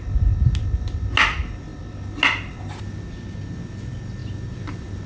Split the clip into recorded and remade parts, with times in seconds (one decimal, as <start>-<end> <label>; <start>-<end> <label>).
0.0-5.1 recorded